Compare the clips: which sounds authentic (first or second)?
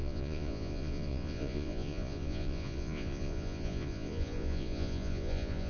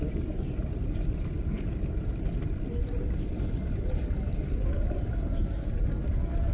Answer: second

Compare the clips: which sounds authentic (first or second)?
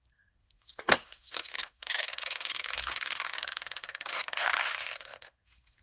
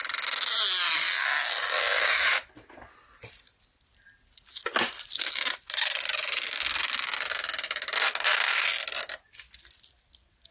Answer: second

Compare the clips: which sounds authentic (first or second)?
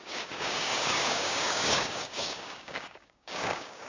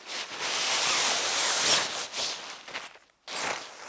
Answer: second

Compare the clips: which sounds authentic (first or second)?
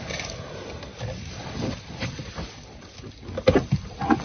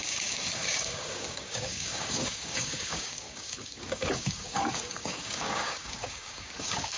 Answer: first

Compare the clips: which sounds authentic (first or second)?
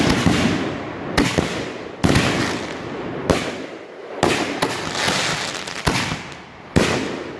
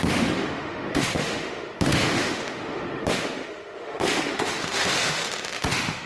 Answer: first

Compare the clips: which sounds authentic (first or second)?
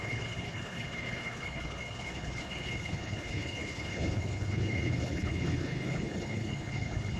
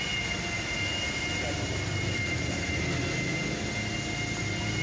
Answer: second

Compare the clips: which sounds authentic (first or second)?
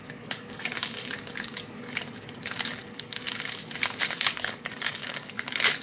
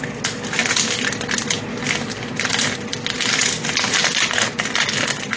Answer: second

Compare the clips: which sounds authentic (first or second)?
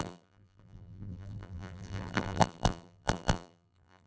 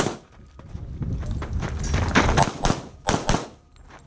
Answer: second